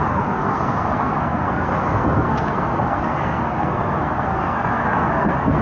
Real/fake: fake